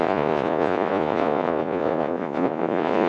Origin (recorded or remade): remade